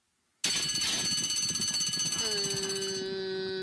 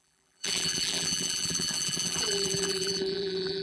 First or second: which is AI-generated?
second